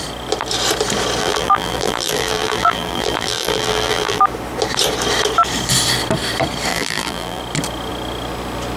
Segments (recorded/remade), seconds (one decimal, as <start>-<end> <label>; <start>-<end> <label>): 0.0-1.2 recorded; 1.2-4.2 remade; 4.2-6.7 recorded; 6.7-7.4 remade; 7.4-8.8 recorded